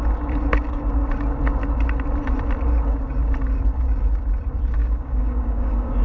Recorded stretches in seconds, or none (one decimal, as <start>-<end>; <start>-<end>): 0.0-4.8